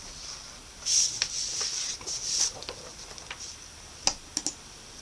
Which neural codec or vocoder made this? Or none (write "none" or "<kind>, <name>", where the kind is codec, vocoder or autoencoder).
none